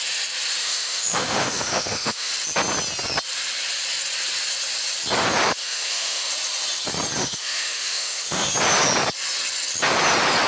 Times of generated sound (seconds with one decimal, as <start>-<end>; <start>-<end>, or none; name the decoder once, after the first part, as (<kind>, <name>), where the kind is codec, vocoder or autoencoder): 0.6-2.3 (autoencoder, DAC-VAE); 5.6-6.3; 7.2-8.5